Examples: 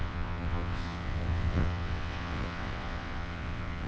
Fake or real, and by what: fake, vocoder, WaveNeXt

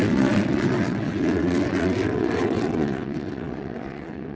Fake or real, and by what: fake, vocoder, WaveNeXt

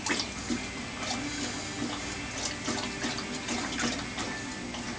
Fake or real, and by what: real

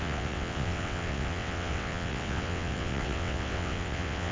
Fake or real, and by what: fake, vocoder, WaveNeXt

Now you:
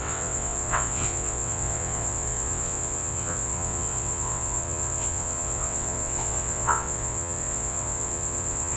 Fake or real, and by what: fake, vocoder, WaveNeXt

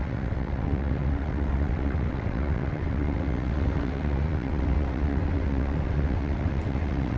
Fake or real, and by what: fake, vocoder, WaveNeXt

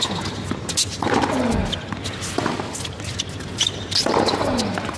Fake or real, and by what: real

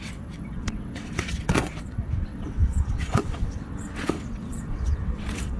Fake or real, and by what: fake, vocoder, WaveNeXt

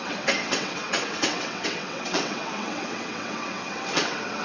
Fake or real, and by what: fake, vocoder, WaveNeXt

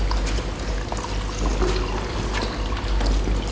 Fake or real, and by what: real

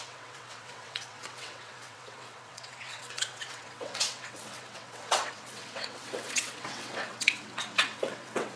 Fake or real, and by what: fake, vocoder, WaveNeXt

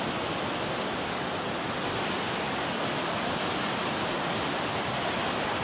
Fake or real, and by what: real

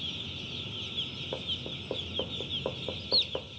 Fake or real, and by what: real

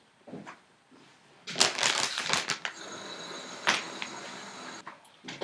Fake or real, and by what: real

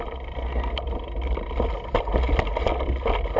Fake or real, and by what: real